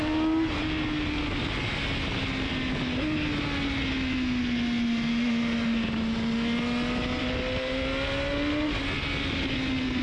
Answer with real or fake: real